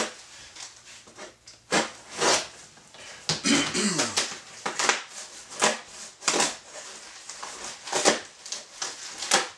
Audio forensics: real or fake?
real